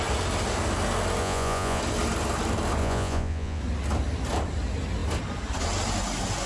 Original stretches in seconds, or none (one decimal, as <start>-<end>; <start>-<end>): 0.0-1.2; 1.8-2.8; 3.6-6.5